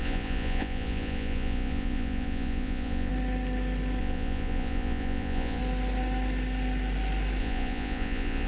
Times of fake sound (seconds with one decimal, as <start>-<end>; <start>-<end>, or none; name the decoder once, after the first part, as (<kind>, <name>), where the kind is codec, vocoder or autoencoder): 0.0-3.1 (vocoder, Vocos); 4.0-5.6; 7.4-8.5

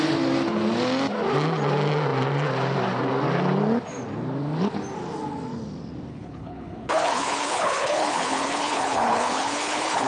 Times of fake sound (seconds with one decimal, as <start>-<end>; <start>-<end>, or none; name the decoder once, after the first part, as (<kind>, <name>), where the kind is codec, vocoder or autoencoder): 6.1-10.1 (codec, HILCodec)

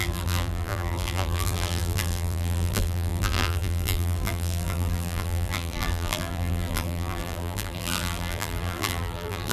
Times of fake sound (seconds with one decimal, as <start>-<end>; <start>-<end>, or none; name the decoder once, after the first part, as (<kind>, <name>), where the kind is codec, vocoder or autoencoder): 0.0-9.5 (vocoder, BigVGAN v2)

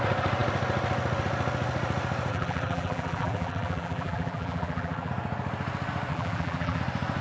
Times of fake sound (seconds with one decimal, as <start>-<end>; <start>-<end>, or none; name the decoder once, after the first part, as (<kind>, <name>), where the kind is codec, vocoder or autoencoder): 2.3-5.1 (vocoder, BigVGAN v2); 6.1-6.8

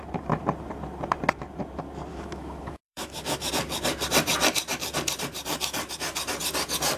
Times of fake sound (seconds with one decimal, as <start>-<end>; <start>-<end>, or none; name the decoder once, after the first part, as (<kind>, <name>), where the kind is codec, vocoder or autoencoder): 2.1-3.5 (autoencoder, DAC-VAE)